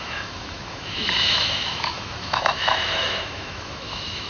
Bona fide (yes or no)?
no